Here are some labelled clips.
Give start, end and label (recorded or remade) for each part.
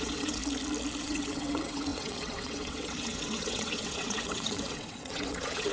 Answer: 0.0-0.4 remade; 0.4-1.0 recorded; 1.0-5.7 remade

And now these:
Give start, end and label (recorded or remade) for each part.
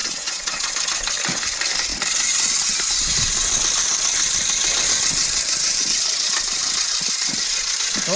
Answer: 0.0-0.7 remade; 0.7-8.2 recorded